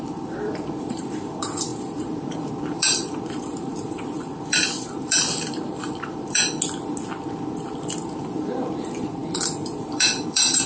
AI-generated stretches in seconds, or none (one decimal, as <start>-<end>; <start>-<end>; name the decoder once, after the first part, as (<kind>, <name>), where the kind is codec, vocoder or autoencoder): 0.0-6.4 (vocoder, BigVGAN v2); 8.2-10.7

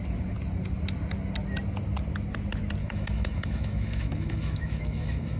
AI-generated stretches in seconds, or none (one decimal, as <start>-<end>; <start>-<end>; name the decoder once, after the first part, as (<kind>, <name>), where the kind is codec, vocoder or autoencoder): 2.8-5.4 (autoencoder, DAC-VAE)

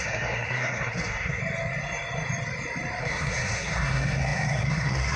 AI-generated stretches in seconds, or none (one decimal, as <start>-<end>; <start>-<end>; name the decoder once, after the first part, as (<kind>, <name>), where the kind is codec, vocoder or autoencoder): 0.0-1.4 (codec, SNAC); 3.0-5.2

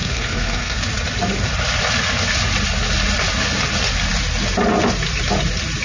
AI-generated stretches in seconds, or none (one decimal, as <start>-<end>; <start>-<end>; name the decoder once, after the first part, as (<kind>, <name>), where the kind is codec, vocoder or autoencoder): 0.0-0.8 (codec, SNAC)

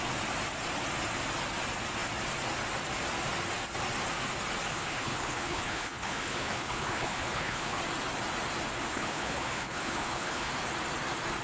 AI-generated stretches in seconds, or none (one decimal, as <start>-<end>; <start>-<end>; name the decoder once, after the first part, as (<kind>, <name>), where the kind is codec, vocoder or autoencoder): 4.7-7.8 (codec, HILCodec); 8.9-10.5

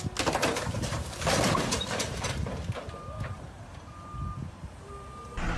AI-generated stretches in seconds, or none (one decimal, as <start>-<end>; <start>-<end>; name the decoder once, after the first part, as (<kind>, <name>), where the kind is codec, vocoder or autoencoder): 0.4-3.8 (vocoder, BigVGAN v2)